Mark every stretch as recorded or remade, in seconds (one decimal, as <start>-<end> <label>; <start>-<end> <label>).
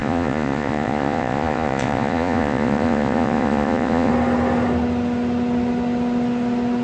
0.0-4.1 remade; 4.1-6.8 recorded